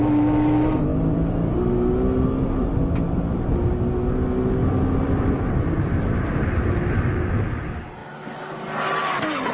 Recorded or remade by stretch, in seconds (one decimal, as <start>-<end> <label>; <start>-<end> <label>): 0.0-0.9 recorded; 0.9-1.5 remade; 1.5-4.6 recorded; 4.6-6.4 remade; 6.4-9.5 recorded